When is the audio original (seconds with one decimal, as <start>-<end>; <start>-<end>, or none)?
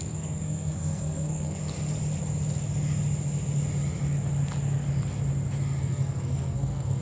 1.6-5.8